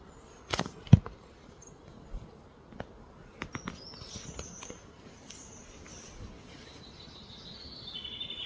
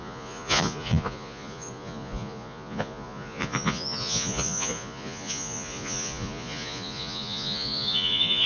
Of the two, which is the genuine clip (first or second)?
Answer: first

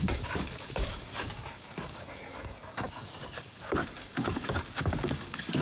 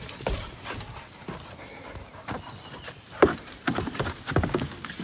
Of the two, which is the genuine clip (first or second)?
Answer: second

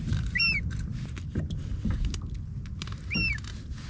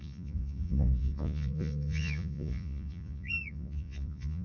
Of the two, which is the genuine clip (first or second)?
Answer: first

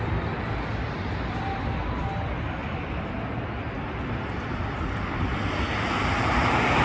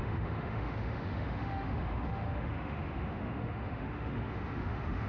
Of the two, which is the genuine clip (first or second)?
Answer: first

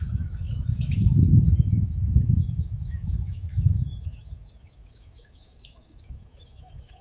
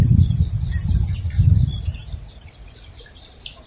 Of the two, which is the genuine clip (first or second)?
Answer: second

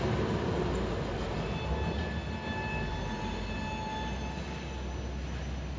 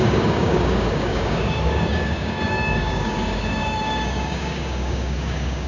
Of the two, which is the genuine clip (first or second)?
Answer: first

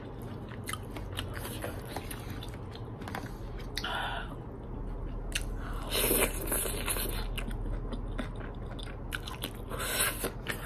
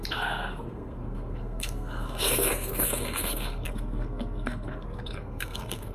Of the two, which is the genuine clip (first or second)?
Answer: first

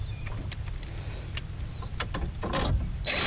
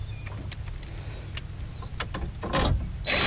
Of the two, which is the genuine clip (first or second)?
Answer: second